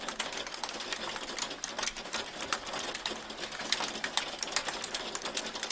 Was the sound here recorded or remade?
recorded